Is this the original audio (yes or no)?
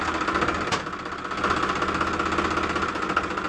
yes